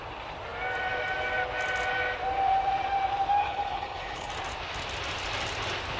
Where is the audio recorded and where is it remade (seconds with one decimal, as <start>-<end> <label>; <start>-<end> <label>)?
0.0-3.4 recorded; 3.4-4.3 remade; 4.3-6.0 recorded